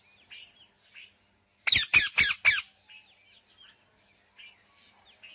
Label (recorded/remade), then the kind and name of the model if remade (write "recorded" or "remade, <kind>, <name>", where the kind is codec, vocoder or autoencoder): recorded